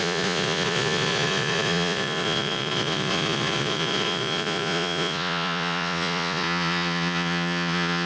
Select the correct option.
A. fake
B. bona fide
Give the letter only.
A